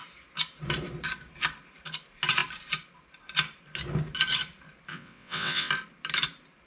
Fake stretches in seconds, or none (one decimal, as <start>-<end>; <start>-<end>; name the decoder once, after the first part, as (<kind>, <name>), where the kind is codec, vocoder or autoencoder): 4.9-5.7 (vocoder, WaveNeXt)